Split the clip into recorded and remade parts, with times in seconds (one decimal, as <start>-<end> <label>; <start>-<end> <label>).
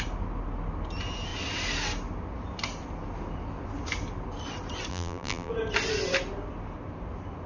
0.0-4.9 recorded; 4.9-5.5 remade; 5.5-7.5 recorded